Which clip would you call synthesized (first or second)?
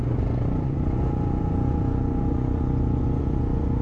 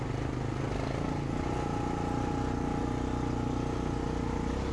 first